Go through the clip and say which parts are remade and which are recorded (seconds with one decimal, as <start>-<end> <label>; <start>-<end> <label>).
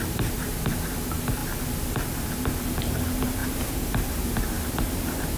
0.0-1.4 remade; 1.4-2.7 recorded; 2.7-5.4 remade